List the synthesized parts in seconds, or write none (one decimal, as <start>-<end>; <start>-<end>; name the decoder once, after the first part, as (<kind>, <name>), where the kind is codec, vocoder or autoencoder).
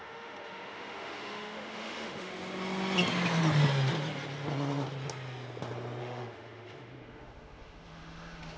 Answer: 0.0-2.3 (autoencoder, DAC-VAE); 6.0-8.6